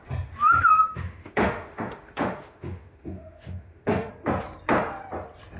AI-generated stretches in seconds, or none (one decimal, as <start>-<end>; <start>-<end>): 0.7-4.1